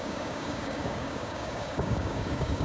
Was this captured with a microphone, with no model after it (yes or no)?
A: no